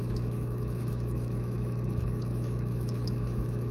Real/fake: fake